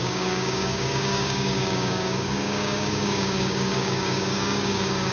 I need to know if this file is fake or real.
fake